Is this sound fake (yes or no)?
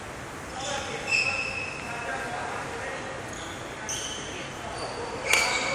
no